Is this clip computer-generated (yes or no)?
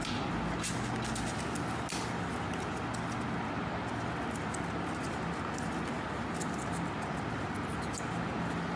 no